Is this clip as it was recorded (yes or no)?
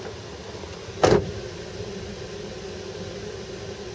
yes